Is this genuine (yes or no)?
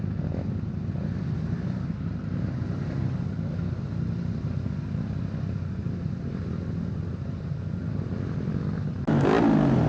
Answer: yes